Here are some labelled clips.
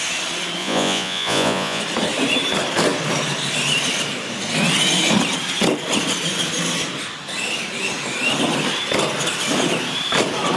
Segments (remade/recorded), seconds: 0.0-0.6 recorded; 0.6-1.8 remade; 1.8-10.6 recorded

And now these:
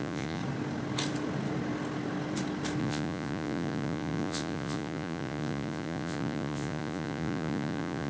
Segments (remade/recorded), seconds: 0.0-0.4 remade; 0.4-2.8 recorded; 2.8-8.1 remade

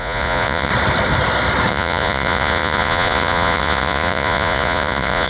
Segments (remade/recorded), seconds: 0.0-0.7 remade; 0.7-1.7 recorded; 1.7-5.3 remade